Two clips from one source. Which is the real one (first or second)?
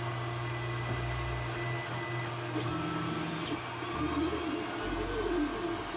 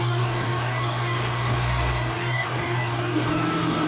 first